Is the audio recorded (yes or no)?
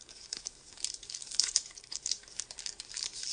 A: no